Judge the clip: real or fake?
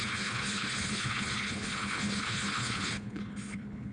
fake